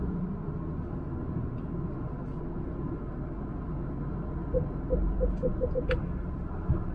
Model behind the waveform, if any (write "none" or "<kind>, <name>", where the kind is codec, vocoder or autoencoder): none